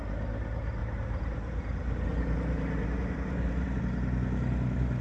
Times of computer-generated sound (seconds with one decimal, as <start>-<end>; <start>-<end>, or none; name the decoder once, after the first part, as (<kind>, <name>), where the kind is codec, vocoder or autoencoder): 0.8-3.8 (vocoder, BigVGAN v2)